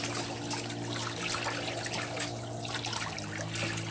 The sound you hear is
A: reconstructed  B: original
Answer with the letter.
B